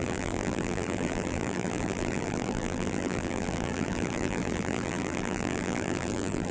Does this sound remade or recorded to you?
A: remade